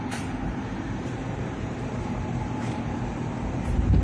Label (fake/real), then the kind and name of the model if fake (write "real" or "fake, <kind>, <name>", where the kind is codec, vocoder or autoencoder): fake, vocoder, BigVGAN v2